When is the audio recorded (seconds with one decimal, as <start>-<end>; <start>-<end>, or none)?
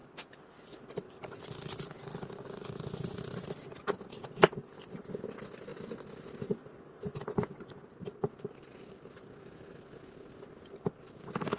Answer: 0.0-11.6